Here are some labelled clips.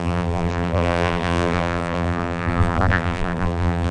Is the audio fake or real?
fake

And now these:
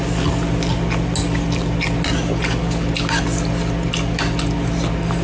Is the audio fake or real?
real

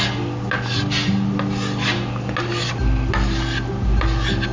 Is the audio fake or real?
real